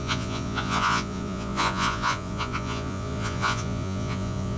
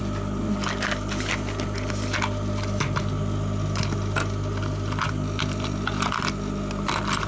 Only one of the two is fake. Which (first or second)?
first